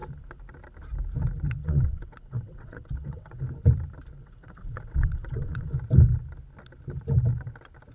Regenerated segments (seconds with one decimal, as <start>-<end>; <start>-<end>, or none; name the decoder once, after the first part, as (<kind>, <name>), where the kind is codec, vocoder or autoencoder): 1.6-3.4 (vocoder, WaveNeXt); 4.2-5.7